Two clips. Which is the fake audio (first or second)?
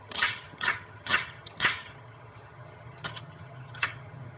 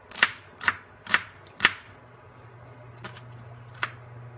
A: first